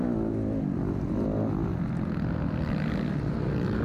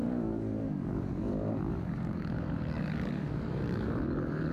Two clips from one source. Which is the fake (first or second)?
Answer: second